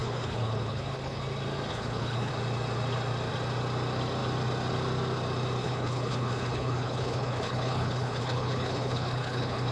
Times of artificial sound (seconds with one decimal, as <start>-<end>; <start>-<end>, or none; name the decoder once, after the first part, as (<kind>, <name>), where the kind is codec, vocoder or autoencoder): 0.0-1.2 (codec, HILCodec); 1.7-2.3; 5.6-9.7